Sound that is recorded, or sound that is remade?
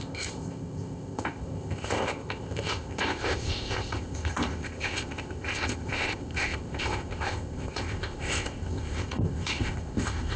remade